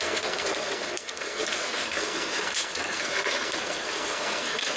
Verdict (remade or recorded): remade